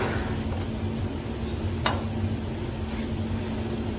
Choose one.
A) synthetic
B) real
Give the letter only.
B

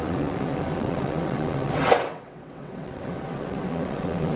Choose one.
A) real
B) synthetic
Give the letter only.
B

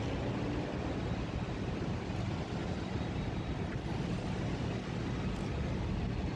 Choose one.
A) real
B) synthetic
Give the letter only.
A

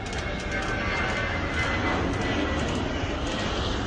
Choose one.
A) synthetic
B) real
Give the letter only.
B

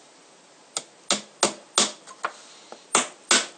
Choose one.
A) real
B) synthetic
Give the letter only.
A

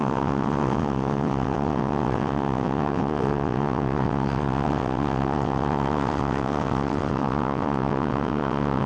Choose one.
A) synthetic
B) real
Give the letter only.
A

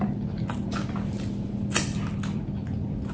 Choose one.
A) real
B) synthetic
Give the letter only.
A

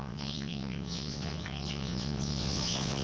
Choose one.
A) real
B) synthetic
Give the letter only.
B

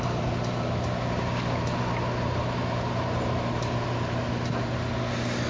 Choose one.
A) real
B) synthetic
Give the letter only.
A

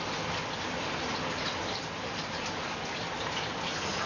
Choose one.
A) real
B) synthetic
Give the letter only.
A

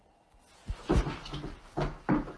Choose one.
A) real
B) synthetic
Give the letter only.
A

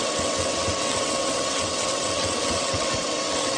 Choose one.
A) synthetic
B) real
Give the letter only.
A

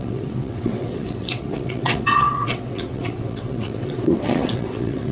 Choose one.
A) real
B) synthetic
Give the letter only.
B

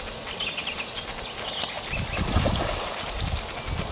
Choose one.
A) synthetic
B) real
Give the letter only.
B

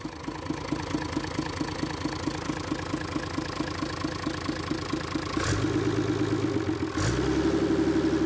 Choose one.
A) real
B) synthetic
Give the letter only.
A